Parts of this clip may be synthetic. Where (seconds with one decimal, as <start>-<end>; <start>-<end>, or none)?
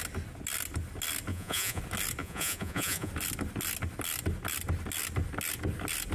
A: 1.3-1.8; 2.2-3.1